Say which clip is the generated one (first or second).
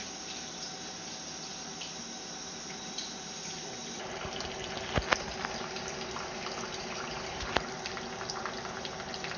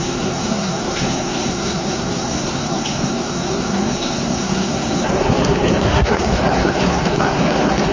second